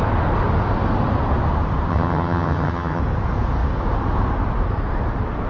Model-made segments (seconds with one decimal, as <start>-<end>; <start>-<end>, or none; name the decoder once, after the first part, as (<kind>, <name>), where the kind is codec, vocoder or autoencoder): 1.9-3.0 (vocoder, HiFi-GAN)